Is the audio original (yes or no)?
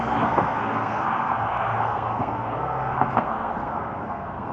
no